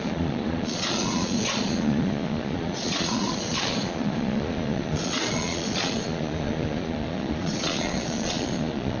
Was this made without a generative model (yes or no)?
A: no